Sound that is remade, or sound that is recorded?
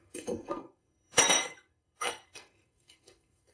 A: remade